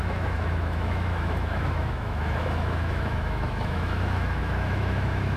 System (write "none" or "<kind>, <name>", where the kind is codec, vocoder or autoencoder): autoencoder, DAC-VAE